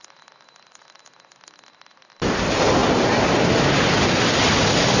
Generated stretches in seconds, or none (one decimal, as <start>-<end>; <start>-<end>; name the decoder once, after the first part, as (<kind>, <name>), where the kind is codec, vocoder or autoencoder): none